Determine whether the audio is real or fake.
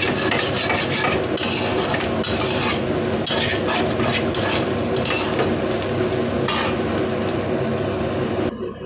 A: real